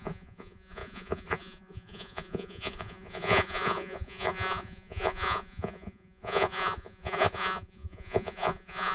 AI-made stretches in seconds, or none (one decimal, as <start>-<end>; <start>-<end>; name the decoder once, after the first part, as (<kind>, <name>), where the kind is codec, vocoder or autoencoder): 0.0-8.9 (vocoder, Vocos)